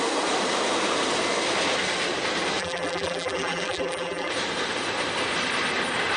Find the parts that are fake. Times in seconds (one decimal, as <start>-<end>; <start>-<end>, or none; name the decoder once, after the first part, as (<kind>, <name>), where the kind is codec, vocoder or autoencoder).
2.6-4.3 (vocoder, BigVGAN v2)